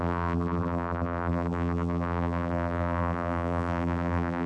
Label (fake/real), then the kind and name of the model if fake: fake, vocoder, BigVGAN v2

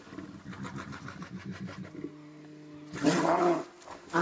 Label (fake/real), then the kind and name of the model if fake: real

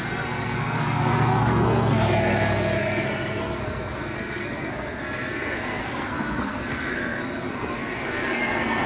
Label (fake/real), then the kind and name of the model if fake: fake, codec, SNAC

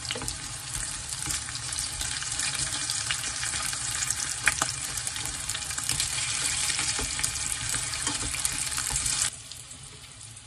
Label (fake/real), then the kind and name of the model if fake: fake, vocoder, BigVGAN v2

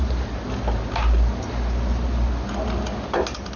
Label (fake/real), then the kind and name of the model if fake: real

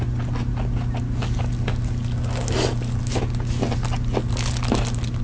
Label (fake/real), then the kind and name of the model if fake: real